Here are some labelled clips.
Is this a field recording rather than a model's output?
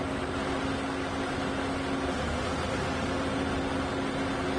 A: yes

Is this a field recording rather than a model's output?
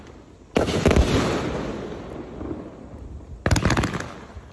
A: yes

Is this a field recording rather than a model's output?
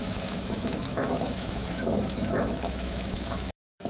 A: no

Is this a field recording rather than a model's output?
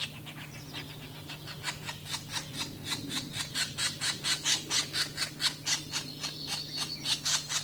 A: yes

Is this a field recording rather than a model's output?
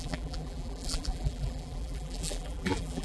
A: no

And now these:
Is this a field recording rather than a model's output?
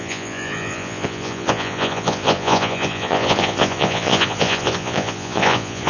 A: no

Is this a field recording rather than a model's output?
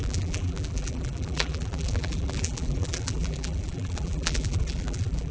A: no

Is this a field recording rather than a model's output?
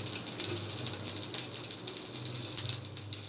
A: yes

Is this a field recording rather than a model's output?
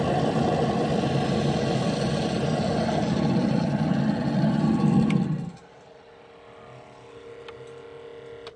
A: yes